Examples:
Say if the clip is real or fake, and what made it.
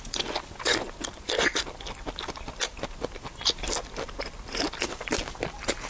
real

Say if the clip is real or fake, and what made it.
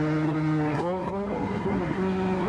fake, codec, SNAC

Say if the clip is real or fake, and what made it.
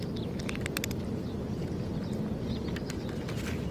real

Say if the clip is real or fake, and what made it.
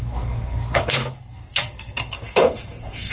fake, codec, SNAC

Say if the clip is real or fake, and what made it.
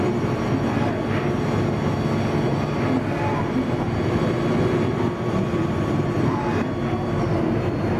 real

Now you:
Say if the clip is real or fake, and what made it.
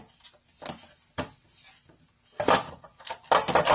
real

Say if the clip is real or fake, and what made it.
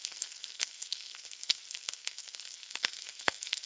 fake, codec, SNAC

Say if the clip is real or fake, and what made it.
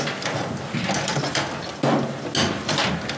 real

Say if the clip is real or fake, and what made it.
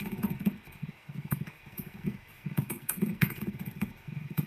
fake, codec, SNAC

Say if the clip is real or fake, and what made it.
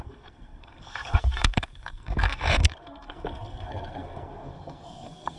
fake, codec, SNAC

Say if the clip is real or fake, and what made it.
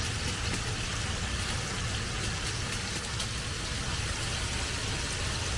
real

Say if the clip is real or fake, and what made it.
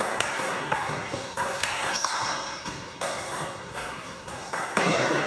fake, codec, SNAC